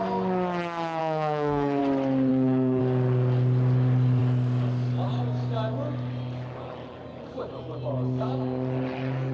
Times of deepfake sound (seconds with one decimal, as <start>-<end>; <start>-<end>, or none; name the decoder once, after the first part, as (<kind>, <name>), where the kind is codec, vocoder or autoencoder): 1.0-1.8 (codec, SNAC); 2.3-2.8